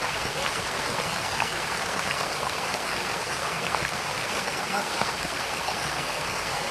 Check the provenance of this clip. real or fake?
fake